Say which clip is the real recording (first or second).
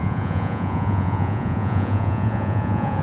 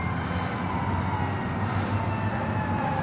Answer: second